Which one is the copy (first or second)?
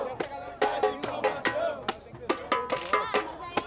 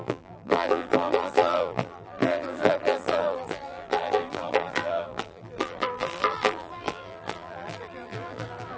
second